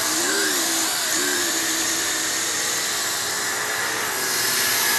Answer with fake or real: fake